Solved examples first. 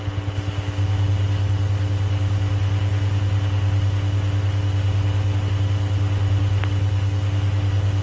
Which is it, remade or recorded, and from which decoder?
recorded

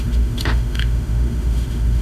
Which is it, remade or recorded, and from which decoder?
remade, autoencoder, DAC-VAE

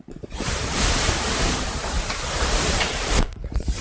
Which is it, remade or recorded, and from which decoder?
remade, vocoder, BigVGAN v2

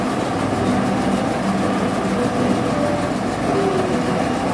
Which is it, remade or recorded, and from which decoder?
recorded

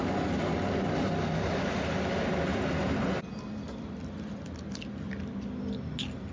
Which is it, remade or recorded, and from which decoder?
recorded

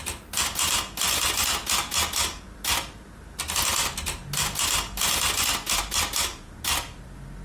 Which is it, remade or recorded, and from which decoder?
recorded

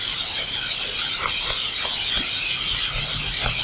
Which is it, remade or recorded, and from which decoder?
recorded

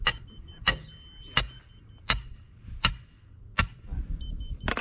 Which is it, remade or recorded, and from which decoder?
recorded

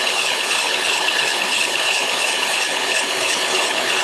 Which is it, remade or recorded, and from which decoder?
remade, codec, HILCodec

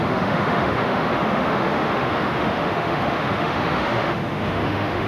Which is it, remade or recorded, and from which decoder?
remade, autoencoder, DAC-VAE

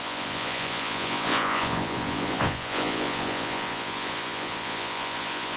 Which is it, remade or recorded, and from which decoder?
remade, vocoder, Vocos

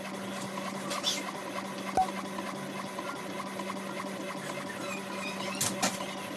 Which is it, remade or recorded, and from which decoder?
recorded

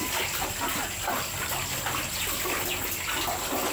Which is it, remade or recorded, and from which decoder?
recorded